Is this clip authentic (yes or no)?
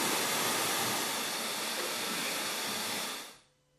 yes